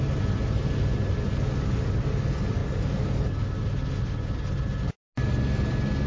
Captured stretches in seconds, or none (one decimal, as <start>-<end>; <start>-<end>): 0.0-6.1